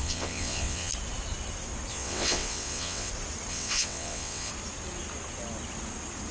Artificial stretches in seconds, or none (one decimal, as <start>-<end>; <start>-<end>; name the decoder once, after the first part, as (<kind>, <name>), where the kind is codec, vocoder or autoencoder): 0.0-0.9 (vocoder, WaveNeXt); 1.9-3.1; 3.5-4.5